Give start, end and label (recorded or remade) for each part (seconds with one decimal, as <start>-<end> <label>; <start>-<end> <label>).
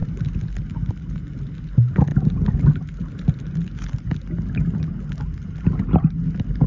0.0-6.7 recorded